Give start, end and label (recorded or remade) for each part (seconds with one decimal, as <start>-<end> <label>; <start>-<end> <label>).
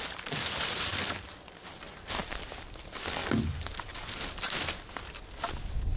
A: 0.0-6.0 recorded